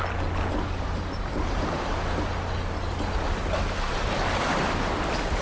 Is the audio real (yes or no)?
yes